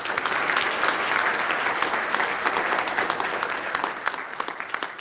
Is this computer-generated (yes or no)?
no